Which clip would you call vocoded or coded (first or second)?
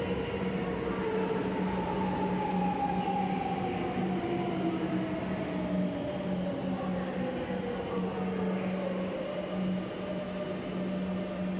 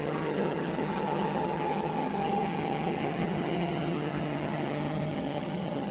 second